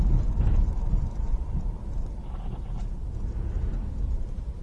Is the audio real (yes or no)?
no